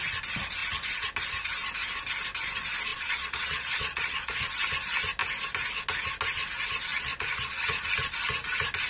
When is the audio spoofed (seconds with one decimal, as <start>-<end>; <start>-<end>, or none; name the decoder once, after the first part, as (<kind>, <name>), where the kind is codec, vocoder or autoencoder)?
2.9-4.4 (vocoder, Vocos); 6.9-7.7